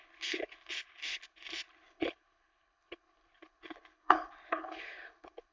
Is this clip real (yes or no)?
no